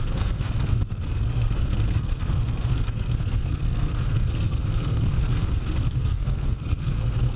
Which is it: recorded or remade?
remade